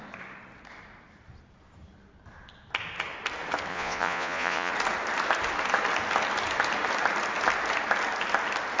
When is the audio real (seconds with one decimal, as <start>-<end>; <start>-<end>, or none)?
0.0-3.7; 4.7-8.8